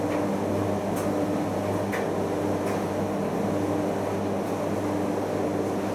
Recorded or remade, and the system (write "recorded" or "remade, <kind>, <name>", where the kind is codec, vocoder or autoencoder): recorded